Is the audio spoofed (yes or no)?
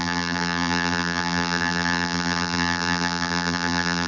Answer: yes